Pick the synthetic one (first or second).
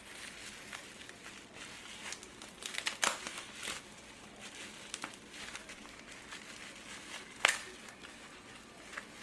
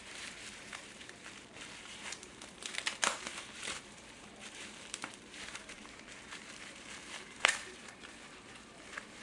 second